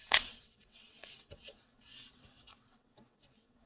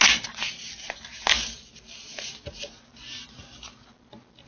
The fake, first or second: first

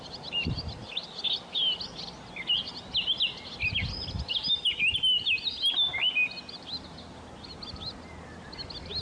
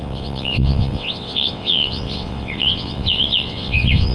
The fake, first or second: second